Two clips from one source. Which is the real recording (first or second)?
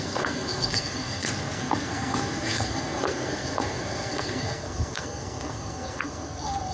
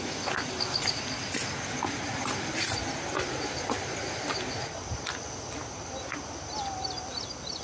second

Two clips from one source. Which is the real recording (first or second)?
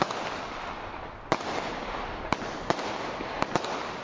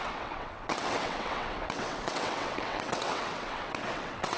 first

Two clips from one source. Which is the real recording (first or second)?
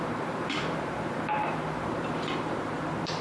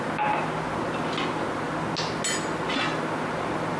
second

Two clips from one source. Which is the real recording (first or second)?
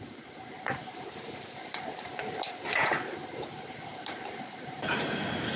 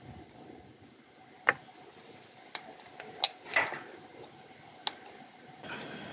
second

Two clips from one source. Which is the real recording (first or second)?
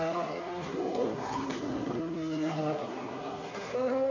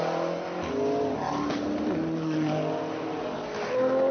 second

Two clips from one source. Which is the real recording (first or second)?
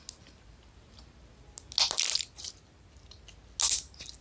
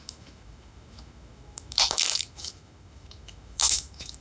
first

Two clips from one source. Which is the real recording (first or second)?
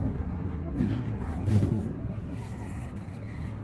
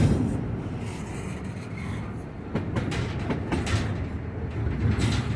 second